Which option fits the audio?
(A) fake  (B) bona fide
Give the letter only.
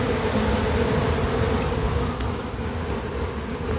B